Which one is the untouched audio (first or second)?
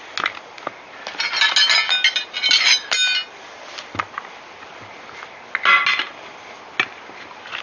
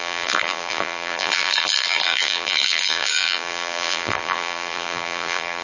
first